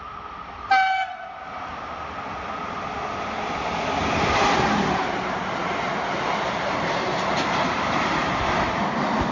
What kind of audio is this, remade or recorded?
recorded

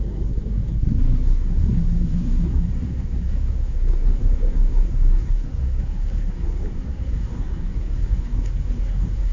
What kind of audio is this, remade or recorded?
remade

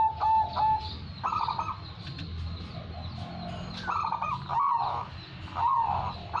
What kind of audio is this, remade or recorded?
recorded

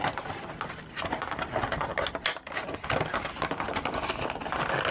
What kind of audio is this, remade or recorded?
recorded